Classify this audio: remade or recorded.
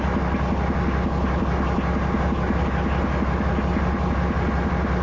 recorded